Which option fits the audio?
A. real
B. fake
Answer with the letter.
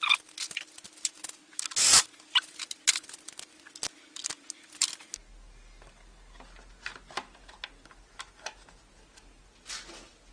A